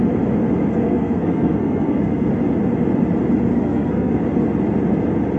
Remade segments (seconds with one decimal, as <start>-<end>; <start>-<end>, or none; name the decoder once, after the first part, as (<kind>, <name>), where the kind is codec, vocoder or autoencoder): 0.7-2.3 (codec, SNAC); 3.5-4.2